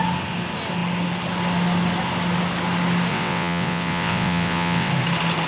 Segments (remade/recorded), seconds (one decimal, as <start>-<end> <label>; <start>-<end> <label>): 0.0-3.1 recorded; 3.1-4.9 remade; 4.9-5.5 recorded